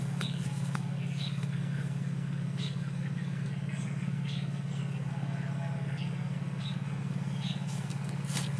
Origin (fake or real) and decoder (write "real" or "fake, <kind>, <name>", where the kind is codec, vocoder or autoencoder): fake, codec, SNAC